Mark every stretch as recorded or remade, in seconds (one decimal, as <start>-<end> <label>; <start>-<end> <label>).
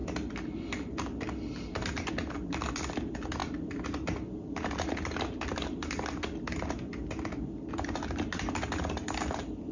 0.0-9.7 recorded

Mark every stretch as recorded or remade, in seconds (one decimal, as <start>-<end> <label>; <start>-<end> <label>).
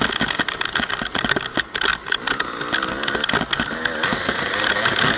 0.0-5.2 recorded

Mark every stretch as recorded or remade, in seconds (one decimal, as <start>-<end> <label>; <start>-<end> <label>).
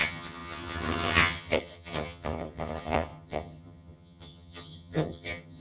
0.0-5.6 remade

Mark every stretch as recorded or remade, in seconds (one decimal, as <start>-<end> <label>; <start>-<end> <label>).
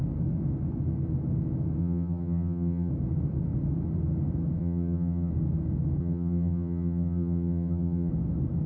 0.0-1.8 recorded; 1.8-2.9 remade; 2.9-4.6 recorded; 4.6-5.3 remade; 5.3-6.0 recorded; 6.0-8.1 remade; 8.1-8.7 recorded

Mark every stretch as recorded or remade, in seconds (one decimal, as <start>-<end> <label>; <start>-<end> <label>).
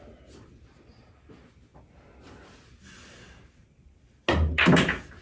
0.0-5.2 recorded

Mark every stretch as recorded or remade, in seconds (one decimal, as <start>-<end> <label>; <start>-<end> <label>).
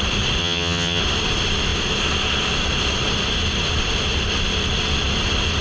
0.0-0.4 recorded; 0.4-1.0 remade; 1.0-5.6 recorded